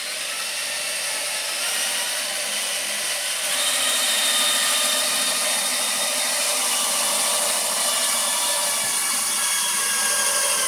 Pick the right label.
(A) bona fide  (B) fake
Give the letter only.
A